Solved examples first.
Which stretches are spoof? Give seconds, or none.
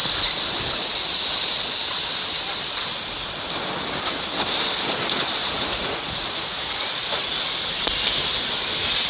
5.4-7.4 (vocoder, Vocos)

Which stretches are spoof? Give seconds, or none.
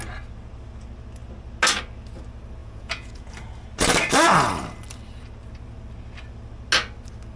2.6-3.3 (vocoder, Vocos)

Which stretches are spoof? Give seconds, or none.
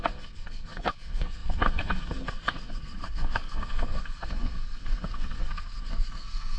0.0-6.6 (codec, SNAC)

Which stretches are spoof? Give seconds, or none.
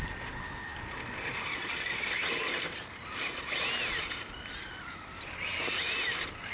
none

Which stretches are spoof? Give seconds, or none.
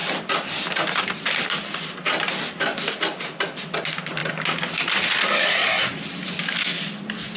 none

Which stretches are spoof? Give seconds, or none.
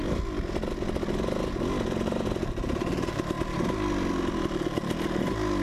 none